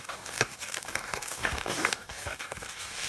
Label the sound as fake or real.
fake